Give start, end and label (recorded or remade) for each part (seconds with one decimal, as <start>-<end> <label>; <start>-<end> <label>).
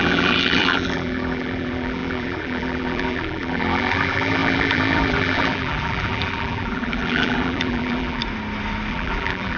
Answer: 0.0-8.2 remade; 8.2-8.9 recorded; 8.9-9.6 remade